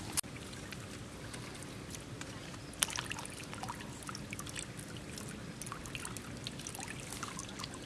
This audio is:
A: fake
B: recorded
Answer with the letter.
B